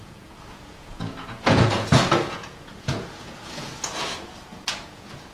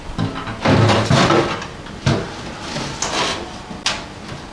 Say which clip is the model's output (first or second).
first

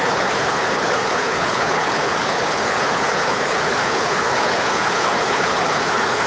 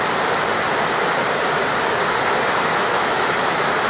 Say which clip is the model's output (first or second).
first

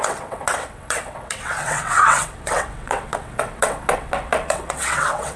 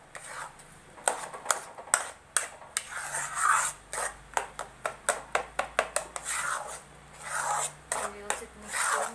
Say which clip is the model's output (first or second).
first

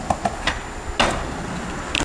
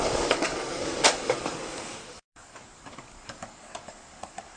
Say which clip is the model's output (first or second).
second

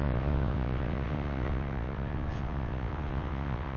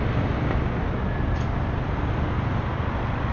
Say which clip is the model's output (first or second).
first